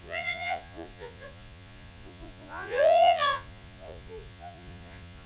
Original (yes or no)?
no